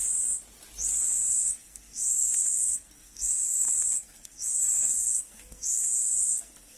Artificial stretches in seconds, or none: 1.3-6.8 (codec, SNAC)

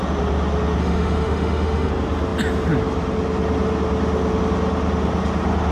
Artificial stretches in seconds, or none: 0.8-1.9 (autoencoder, DAC-VAE)

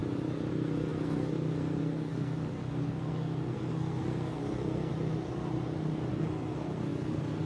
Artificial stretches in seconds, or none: 0.5-4.9 (codec, SNAC); 6.1-7.5

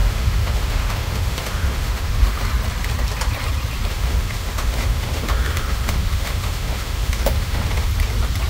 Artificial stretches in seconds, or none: 0.0-2.4 (autoencoder, DAC-VAE); 3.9-7.9

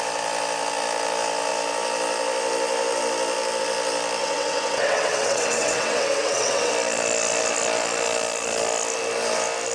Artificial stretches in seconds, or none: 4.2-6.7 (vocoder, WaveNeXt)

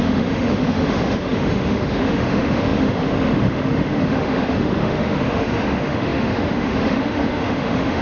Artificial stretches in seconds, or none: 0.0-8.0 (autoencoder, DAC-VAE)

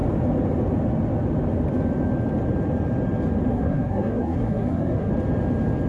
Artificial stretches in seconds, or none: 3.5-5.1 (codec, SNAC)